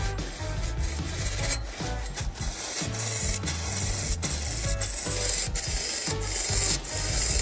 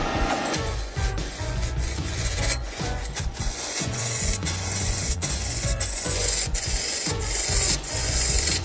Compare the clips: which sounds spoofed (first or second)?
second